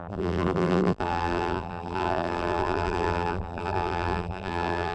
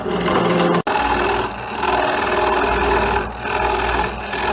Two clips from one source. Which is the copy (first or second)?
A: first